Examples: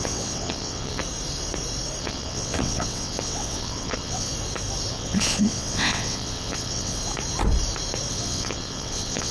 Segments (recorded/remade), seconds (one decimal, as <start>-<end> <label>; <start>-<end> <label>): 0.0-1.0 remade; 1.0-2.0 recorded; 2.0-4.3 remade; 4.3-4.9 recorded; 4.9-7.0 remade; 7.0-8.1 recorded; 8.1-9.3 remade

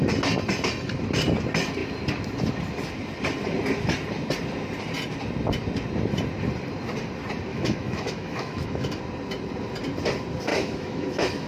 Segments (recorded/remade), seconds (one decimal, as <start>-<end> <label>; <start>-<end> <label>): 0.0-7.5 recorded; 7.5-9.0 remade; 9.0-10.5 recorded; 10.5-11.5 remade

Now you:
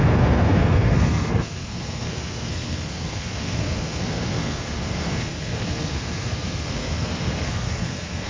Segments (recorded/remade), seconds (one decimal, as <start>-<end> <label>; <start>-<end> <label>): 0.0-8.3 remade

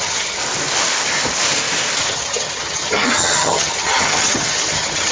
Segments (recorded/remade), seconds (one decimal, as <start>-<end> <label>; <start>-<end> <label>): 0.0-0.4 remade; 0.4-2.0 recorded; 2.0-5.1 remade

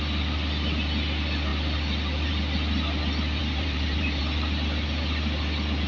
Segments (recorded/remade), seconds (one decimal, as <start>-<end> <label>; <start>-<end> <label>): 0.0-3.4 recorded; 3.4-4.2 remade; 4.2-5.9 recorded

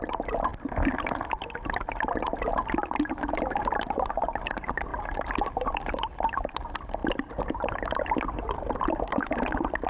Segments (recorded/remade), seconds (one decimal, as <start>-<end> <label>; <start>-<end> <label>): 0.0-4.9 remade; 4.9-5.5 recorded; 5.5-9.9 remade

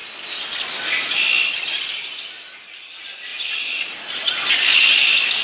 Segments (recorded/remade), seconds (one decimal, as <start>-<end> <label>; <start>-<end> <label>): 0.0-5.4 recorded

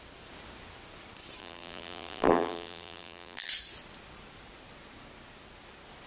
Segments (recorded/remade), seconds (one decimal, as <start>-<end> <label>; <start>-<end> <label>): 0.0-1.4 recorded; 1.4-3.5 remade; 3.5-6.1 recorded